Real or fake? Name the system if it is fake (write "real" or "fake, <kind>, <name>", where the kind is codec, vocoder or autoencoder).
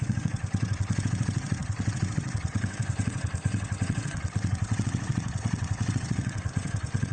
fake, vocoder, WaveNeXt